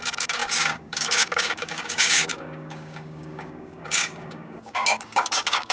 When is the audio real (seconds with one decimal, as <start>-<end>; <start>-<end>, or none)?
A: none